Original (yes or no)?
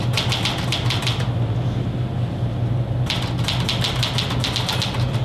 yes